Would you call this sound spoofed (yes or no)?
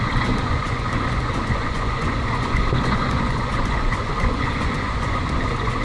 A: yes